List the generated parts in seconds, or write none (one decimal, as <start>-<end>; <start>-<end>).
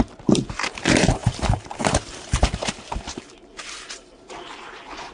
0.0-5.1